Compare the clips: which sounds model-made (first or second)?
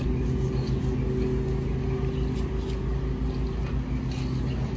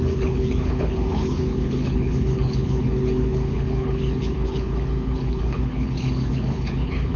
second